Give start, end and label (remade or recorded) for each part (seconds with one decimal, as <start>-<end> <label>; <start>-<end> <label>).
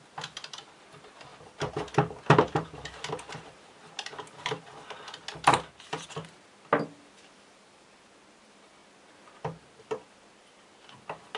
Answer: 0.0-11.4 recorded